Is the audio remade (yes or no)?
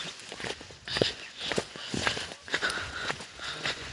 yes